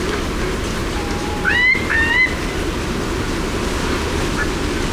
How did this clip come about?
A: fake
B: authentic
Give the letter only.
B